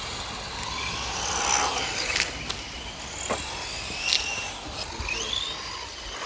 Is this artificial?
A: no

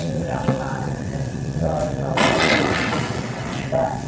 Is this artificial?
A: yes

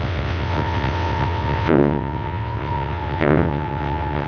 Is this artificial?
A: yes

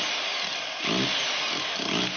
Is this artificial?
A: no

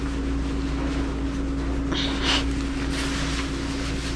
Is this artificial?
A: no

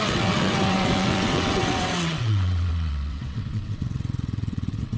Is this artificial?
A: yes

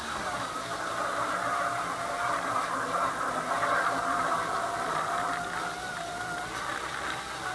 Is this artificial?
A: no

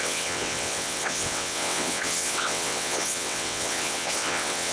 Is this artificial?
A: yes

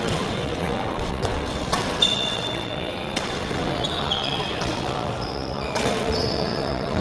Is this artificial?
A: yes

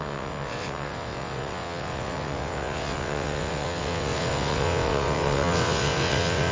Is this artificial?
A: yes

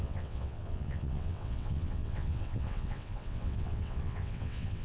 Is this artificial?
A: yes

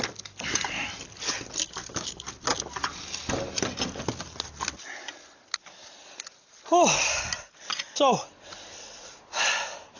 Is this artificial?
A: no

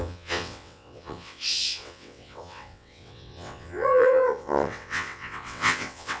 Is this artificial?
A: yes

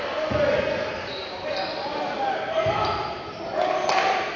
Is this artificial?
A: no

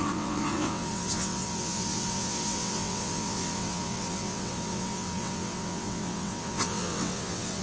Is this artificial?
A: yes